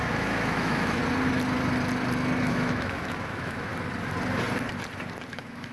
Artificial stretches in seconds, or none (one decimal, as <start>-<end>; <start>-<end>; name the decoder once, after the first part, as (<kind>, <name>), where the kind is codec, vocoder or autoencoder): 0.0-1.0 (autoencoder, DAC-VAE); 2.4-3.7; 5.3-5.7